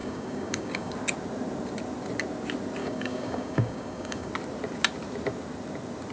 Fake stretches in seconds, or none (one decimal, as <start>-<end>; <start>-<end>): 0.0-0.9; 2.8-4.3